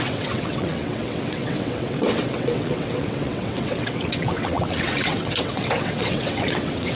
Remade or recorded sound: remade